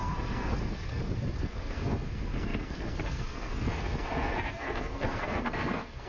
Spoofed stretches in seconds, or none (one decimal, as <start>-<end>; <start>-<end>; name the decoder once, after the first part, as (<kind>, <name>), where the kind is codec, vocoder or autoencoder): 0.0-6.1 (codec, SNAC)